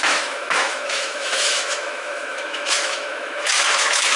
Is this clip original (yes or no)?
no